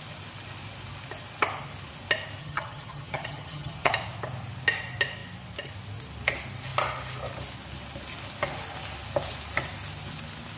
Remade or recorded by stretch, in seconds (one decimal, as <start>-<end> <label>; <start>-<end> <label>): 0.0-2.4 recorded; 2.4-3.9 remade; 3.9-10.6 recorded